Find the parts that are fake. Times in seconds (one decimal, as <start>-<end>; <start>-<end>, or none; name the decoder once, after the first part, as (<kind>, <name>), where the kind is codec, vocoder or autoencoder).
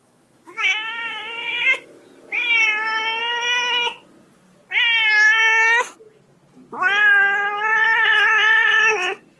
0.0-2.1 (autoencoder, DAC-VAE)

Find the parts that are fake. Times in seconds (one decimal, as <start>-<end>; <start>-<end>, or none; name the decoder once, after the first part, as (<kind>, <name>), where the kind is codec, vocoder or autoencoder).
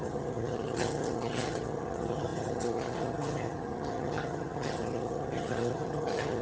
0.0-6.4 (vocoder, HiFi-GAN)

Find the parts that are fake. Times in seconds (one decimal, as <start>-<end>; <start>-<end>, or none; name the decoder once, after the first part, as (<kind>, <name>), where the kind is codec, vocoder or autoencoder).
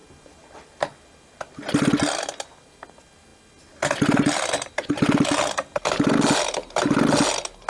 none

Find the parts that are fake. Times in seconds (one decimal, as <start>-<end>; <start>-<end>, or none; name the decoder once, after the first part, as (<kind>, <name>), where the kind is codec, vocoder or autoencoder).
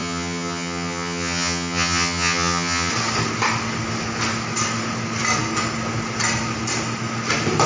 0.0-2.9 (vocoder, HiFi-GAN)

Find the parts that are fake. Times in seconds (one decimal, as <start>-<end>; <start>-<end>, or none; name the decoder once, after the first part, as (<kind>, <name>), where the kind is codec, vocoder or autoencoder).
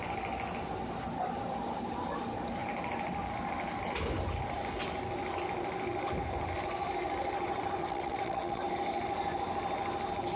7.8-8.6 (vocoder, WaveNeXt)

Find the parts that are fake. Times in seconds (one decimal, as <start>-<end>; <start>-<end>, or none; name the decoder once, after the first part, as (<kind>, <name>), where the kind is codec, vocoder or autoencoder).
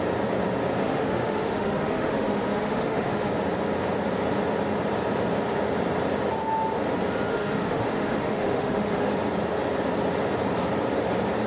0.8-3.3 (autoencoder, DAC-VAE); 7.3-9.1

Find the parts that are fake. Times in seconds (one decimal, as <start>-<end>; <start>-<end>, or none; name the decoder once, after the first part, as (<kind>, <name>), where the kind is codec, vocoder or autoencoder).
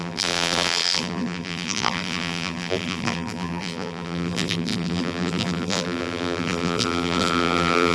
0.0-7.9 (vocoder, BigVGAN v2)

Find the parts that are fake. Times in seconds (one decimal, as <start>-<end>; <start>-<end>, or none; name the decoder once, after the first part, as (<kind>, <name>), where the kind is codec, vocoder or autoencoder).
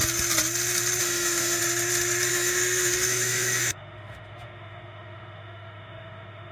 1.0-1.6 (autoencoder, DAC-VAE); 2.3-6.5